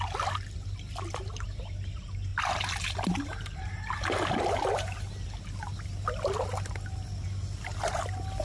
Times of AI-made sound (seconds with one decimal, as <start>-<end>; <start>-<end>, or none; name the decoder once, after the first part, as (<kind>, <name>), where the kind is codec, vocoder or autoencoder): none